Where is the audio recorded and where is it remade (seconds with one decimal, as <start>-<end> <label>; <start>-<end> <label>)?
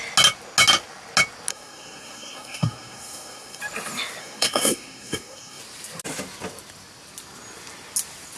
0.0-1.5 recorded; 1.5-3.6 remade; 3.6-4.2 recorded; 4.2-5.6 remade; 5.6-8.4 recorded